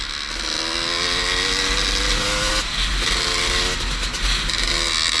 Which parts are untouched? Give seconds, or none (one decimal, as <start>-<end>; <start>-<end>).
0.0-5.2